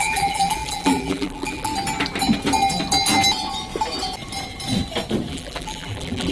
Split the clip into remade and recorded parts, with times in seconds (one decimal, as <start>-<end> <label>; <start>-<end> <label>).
0.0-1.7 remade; 1.7-5.3 recorded; 5.3-6.3 remade